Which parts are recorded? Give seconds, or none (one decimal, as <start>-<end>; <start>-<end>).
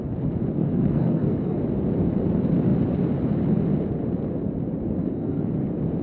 0.0-0.6; 1.6-5.0; 5.5-6.0